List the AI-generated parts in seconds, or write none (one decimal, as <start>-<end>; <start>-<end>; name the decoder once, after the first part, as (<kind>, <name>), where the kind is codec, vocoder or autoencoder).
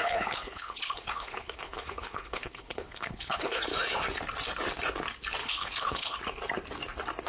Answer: 0.0-3.6 (codec, HILCodec); 5.4-6.2